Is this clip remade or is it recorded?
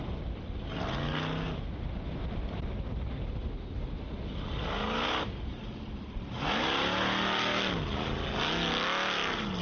recorded